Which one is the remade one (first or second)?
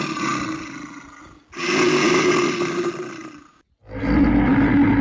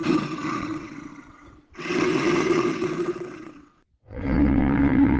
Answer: second